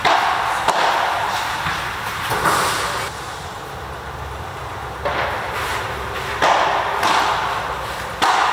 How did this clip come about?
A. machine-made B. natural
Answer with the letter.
B